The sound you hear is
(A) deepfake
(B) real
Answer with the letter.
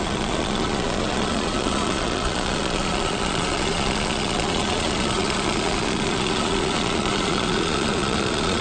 A